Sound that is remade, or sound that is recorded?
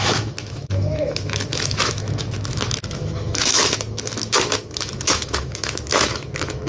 remade